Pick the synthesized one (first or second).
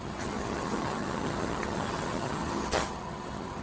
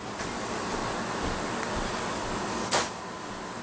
first